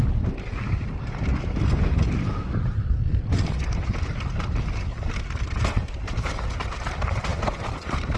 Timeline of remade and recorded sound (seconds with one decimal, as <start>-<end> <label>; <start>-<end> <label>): 0.0-8.2 recorded